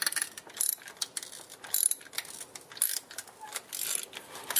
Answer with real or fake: real